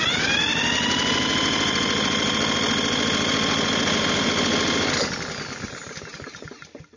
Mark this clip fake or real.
real